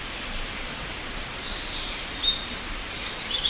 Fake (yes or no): yes